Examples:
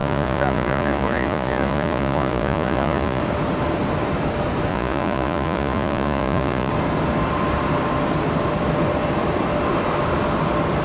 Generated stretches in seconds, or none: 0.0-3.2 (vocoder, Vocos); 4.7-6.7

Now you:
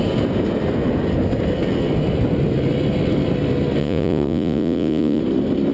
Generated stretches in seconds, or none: 3.8-5.2 (vocoder, Vocos)

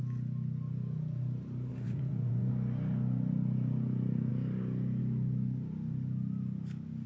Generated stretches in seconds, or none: 1.7-2.5 (vocoder, Vocos)

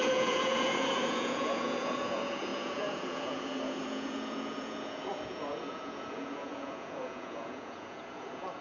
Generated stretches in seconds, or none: 0.0-8.6 (vocoder, Vocos)

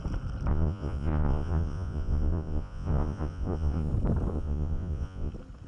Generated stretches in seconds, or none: 0.5-3.9 (vocoder, Vocos); 4.3-5.3

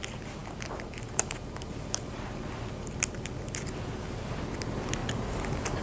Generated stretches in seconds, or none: none

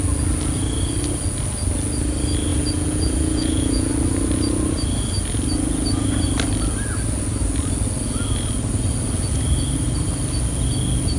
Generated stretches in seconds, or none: 2.5-3.9 (vocoder, Vocos)

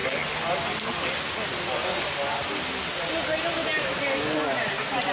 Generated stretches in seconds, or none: none